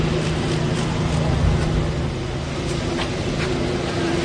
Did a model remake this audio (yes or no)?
no